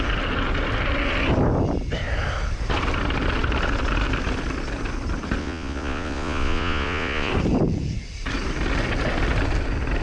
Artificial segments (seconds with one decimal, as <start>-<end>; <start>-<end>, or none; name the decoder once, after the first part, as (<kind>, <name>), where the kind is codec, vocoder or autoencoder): 5.4-7.3 (vocoder, Vocos)